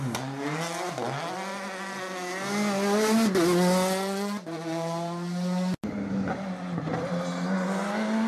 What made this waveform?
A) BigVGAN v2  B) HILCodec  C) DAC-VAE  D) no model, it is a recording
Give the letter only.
D